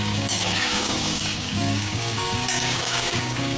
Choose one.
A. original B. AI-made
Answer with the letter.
B